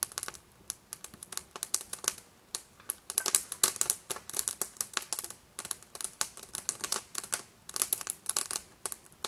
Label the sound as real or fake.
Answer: real